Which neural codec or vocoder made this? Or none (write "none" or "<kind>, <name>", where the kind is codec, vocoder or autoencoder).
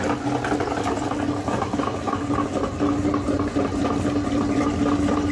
none